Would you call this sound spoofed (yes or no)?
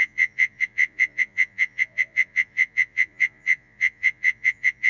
yes